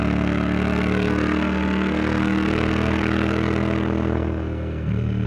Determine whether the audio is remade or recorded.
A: remade